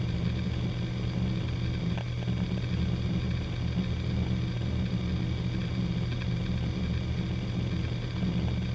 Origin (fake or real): real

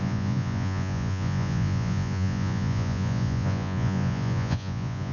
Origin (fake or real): fake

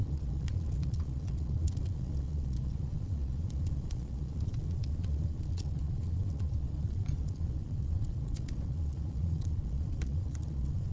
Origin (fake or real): fake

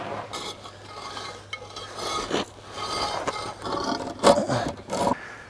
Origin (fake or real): real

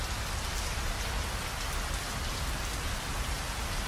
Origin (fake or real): real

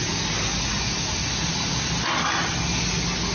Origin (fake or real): real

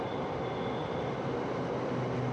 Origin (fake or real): real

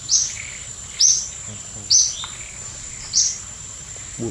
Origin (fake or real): fake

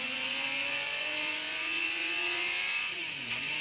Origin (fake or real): fake